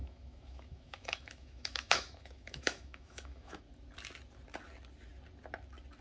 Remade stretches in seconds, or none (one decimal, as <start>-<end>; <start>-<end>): 0.0-3.6